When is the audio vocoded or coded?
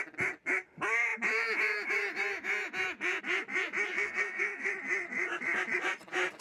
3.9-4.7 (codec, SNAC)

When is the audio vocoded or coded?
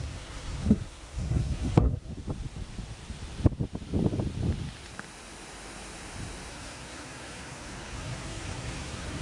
0.0-2.1 (codec, SNAC); 6.5-9.2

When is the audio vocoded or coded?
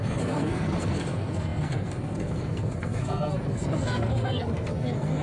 0.0-5.2 (codec, SNAC)